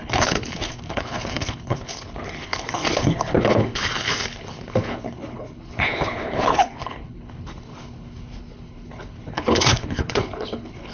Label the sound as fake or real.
fake